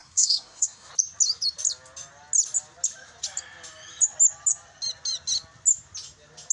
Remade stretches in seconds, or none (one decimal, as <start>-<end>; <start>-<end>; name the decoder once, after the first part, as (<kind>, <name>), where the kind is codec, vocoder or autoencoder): 0.0-0.9 (codec, SNAC)